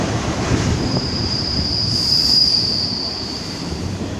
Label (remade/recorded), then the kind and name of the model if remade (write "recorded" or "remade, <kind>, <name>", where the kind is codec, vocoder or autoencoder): remade, vocoder, BigVGAN v2